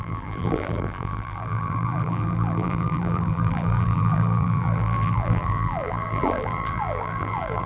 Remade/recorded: remade